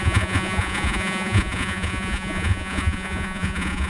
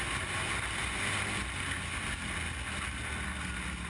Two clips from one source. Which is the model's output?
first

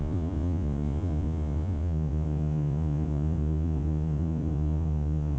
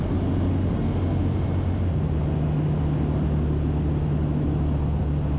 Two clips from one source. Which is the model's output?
first